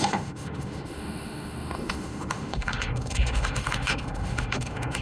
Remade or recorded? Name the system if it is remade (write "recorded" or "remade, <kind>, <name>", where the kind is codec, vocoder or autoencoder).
remade, autoencoder, DAC-VAE